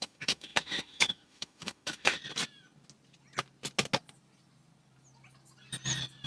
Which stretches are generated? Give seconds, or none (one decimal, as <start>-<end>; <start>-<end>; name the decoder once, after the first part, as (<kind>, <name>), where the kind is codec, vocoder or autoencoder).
0.0-2.2 (autoencoder, DAC-VAE)